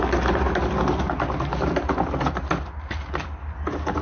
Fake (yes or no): no